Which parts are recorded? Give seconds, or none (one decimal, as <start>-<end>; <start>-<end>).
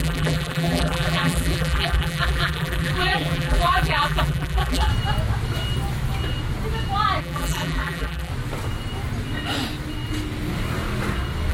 4.9-7.2; 8.3-11.5